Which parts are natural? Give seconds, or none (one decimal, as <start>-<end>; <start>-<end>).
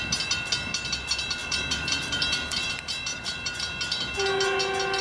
0.0-1.4; 2.7-3.1; 3.6-5.0